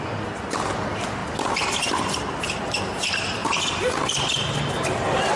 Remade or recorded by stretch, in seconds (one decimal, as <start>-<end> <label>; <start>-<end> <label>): 0.0-5.4 recorded